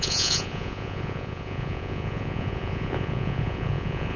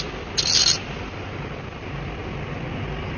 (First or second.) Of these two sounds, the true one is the second